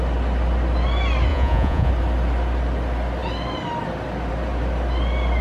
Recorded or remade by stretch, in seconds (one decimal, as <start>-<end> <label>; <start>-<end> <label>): 0.0-1.3 recorded; 1.3-1.9 remade; 1.9-5.4 recorded